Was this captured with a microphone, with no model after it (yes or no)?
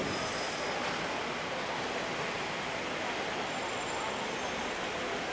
yes